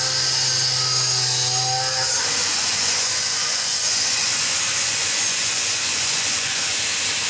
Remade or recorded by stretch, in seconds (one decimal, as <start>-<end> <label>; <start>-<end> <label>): 0.0-2.4 recorded; 2.4-6.8 remade; 6.8-7.3 recorded